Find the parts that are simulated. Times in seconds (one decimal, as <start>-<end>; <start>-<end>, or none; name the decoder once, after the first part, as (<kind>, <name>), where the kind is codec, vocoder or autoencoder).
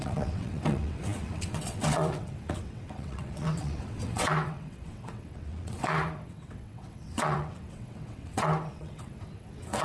0.0-9.8 (vocoder, WaveNeXt)